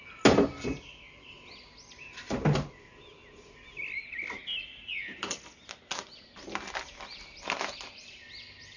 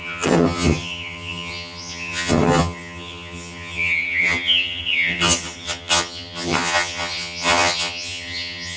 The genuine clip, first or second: first